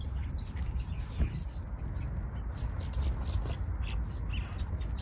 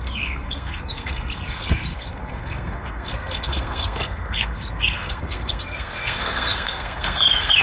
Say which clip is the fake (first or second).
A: second